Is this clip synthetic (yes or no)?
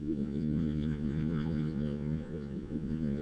yes